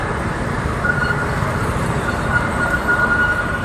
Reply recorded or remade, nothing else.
remade